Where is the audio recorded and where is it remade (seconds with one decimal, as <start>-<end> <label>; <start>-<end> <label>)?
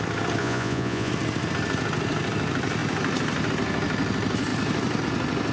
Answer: 0.0-0.4 recorded; 0.4-1.1 remade; 1.1-5.5 recorded